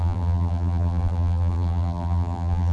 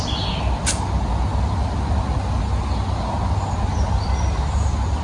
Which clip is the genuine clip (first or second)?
second